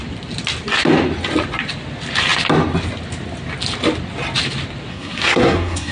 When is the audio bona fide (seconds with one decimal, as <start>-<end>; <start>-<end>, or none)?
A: 0.0-4.9